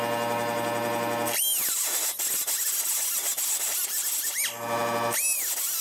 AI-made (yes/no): no